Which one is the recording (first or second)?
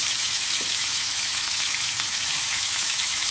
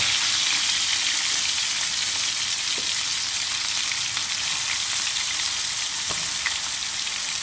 second